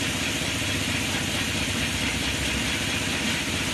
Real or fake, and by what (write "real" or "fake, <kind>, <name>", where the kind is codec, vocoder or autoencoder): fake, vocoder, BigVGAN v2